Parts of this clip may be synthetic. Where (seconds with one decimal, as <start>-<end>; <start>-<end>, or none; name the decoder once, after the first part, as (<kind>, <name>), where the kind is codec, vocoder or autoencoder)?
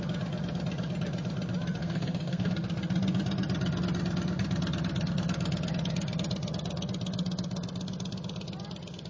1.8-2.5 (codec, SNAC)